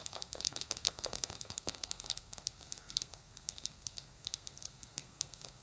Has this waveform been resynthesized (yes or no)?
yes